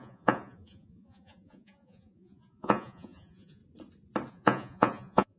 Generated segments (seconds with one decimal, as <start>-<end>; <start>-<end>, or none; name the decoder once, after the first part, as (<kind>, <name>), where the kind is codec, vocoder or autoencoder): 0.0-3.6 (vocoder, Vocos); 4.3-5.4

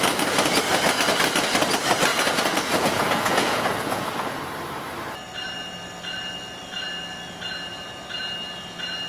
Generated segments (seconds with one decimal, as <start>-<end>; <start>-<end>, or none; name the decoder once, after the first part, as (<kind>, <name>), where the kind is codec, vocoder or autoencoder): 2.1-4.4 (vocoder, Vocos)

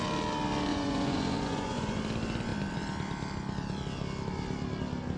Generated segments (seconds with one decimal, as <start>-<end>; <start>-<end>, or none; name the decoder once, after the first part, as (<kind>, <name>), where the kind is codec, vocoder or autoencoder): 0.7-2.0 (vocoder, Vocos)

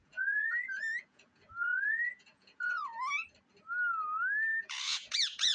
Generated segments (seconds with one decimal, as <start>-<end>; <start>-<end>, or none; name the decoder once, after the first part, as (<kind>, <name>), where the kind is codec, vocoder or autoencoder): 0.0-2.9 (vocoder, Vocos); 4.6-5.5

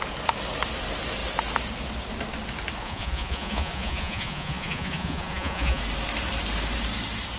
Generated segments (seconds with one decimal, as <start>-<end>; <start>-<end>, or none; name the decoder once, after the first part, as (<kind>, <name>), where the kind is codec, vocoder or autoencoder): 2.8-5.8 (vocoder, Vocos)